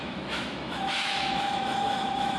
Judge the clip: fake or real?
fake